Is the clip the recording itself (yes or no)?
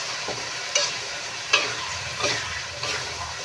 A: no